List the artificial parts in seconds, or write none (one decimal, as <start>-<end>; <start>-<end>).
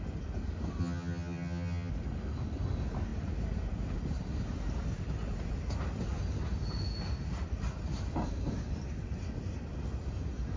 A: 0.8-1.9